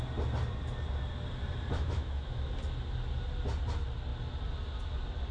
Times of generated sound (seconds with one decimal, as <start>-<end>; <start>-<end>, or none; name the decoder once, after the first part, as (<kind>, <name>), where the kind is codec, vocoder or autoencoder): 1.7-2.5 (autoencoder, DAC-VAE)